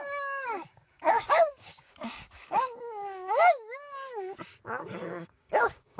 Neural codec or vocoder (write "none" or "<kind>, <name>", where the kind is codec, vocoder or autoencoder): codec, DAC